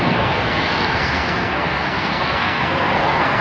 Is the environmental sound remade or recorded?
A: remade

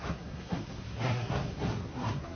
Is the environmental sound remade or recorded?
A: remade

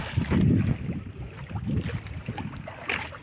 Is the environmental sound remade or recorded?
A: recorded